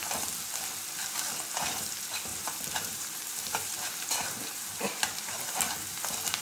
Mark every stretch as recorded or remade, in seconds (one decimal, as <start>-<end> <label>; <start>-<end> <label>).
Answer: 0.0-2.3 recorded; 2.3-5.5 remade; 5.5-6.4 recorded